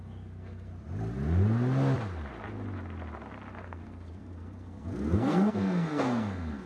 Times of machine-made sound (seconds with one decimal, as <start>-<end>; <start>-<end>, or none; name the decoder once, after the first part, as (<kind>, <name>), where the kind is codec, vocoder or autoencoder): 0.0-0.7 (codec, SNAC); 3.5-6.7